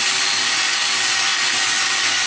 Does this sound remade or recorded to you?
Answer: recorded